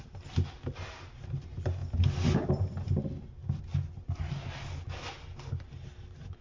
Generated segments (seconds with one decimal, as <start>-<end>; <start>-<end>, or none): none